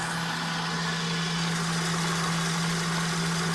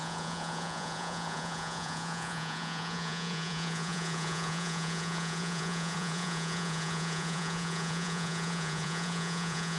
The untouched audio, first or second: first